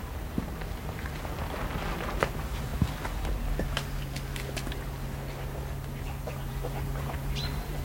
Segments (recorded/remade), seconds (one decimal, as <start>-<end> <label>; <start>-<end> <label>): 0.0-1.2 remade; 1.2-7.8 recorded